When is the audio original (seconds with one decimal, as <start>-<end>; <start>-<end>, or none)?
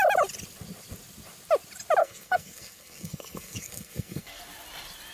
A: 0.0-2.0; 4.4-5.1